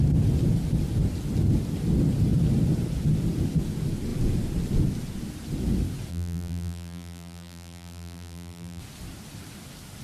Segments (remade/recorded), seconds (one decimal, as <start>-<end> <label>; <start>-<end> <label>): 0.0-6.1 recorded; 6.1-8.8 remade; 8.8-10.0 recorded